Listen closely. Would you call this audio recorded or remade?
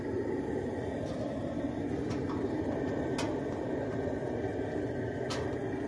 recorded